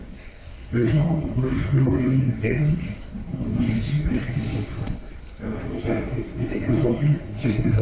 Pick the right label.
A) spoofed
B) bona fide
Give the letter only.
A